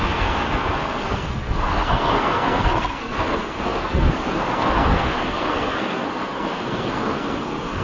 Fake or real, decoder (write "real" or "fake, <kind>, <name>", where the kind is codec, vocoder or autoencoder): fake, codec, SNAC